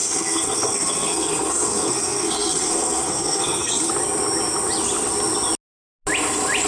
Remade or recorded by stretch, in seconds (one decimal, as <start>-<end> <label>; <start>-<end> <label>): 0.0-3.9 remade; 3.9-6.7 recorded